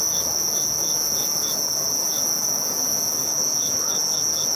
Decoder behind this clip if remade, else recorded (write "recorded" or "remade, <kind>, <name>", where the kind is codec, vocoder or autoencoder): remade, codec, DAC